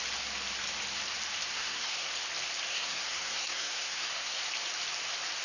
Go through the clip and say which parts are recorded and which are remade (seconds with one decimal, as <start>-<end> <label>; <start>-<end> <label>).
0.0-1.5 recorded; 1.5-2.1 remade; 2.1-2.7 recorded; 2.7-4.4 remade; 4.4-5.4 recorded